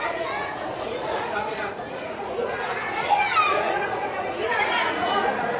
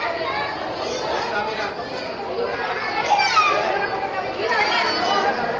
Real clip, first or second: second